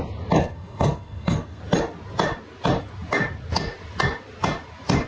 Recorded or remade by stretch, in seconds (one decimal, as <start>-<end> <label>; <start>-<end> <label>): 0.0-0.4 recorded; 0.4-1.6 remade; 1.6-5.1 recorded